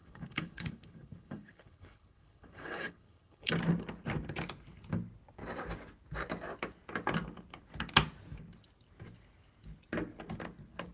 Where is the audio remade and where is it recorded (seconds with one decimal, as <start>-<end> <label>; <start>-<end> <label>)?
0.0-3.5 remade; 3.5-10.9 recorded